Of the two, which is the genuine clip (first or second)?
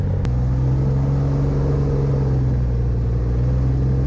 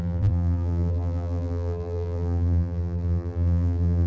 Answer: first